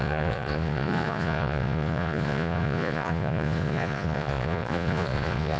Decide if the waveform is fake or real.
fake